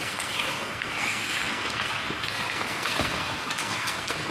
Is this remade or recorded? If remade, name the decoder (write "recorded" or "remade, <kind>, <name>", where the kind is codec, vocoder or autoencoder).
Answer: remade, codec, SNAC